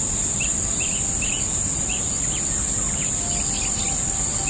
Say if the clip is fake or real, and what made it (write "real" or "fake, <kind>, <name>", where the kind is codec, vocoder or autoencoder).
real